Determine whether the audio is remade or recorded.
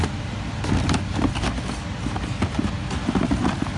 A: recorded